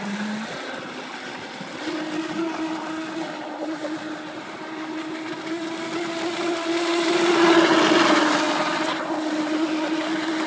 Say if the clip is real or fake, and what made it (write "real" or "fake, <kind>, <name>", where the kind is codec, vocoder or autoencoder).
real